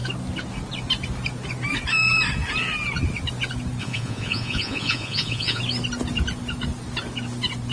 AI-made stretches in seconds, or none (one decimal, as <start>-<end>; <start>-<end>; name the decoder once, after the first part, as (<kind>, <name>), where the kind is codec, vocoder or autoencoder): 3.8-5.6 (vocoder, Vocos)